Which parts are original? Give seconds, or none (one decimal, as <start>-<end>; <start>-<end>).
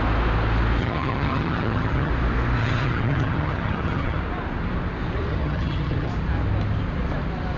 0.0-0.8; 2.1-2.6; 4.2-5.3; 6.1-7.6